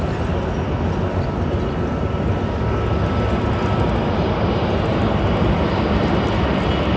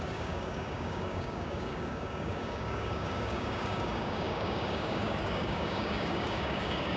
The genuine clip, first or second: first